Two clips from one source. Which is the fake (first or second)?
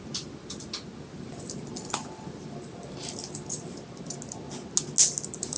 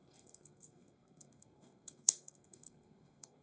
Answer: second